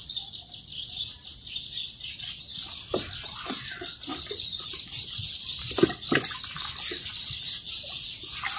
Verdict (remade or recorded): recorded